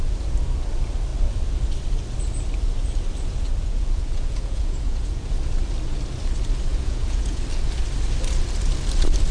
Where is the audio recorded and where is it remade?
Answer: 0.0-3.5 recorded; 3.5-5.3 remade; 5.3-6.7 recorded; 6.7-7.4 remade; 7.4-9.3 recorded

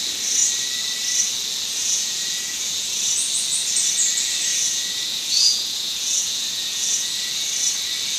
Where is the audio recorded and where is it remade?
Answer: 0.0-1.8 recorded; 1.8-2.9 remade; 2.9-4.5 recorded; 4.5-7.3 remade; 7.3-8.2 recorded

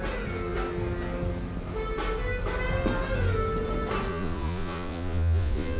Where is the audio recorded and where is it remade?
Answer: 0.0-4.1 recorded; 4.1-5.8 remade

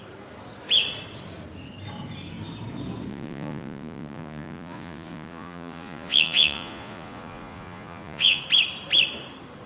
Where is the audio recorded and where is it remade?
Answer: 0.0-3.1 recorded; 3.1-8.4 remade; 8.4-9.7 recorded

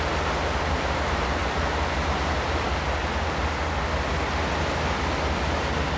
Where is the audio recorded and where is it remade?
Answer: 0.0-6.0 recorded

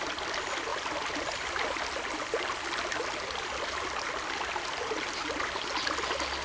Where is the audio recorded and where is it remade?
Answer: 0.0-6.4 recorded

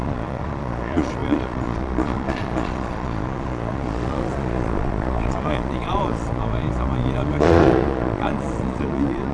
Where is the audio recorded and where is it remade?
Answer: 0.0-9.3 remade

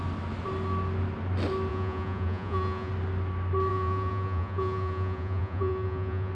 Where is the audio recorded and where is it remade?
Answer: 0.0-1.7 recorded; 1.7-2.9 remade; 2.9-3.7 recorded; 3.7-6.3 remade